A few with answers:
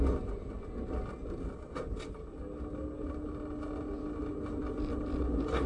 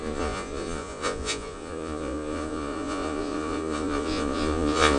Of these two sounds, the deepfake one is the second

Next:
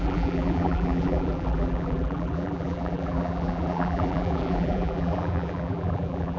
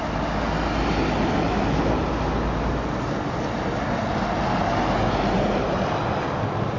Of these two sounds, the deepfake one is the first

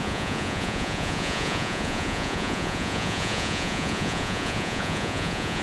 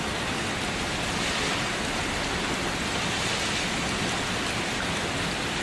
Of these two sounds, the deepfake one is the first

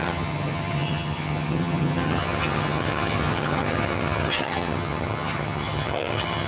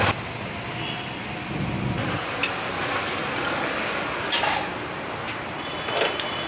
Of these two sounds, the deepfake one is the first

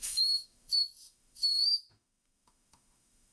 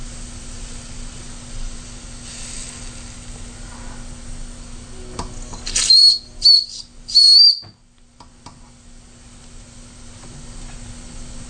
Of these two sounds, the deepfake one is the first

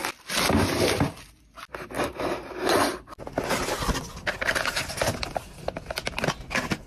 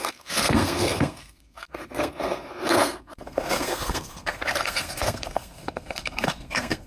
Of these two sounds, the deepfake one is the second